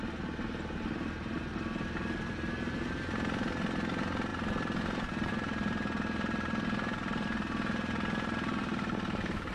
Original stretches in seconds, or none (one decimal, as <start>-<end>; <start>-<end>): 0.0-9.5